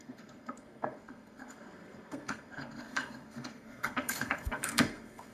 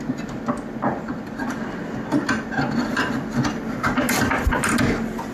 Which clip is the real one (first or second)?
second